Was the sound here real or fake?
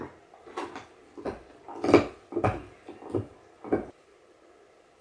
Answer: real